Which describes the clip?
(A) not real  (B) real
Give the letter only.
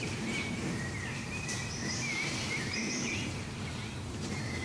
A